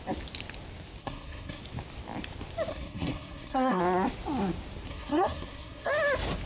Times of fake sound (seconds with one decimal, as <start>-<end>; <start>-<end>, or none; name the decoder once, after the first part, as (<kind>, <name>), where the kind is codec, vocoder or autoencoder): 1.0-1.6 (codec, SNAC); 2.7-3.8; 4.9-5.9